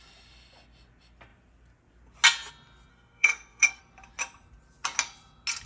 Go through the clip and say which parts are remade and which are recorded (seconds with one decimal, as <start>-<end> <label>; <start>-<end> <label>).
0.0-2.9 recorded; 2.9-3.8 remade; 3.8-5.7 recorded